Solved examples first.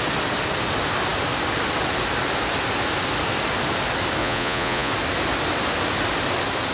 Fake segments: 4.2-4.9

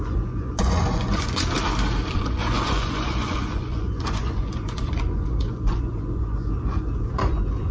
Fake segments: 0.0-1.4; 2.1-7.7

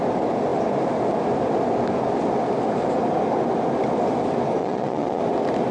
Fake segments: 4.6-5.2

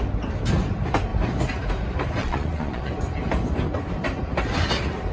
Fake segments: 2.2-2.9